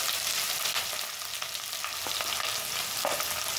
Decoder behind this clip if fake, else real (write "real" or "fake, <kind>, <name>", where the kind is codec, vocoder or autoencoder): real